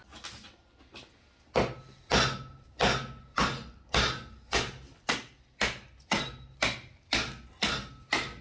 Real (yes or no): yes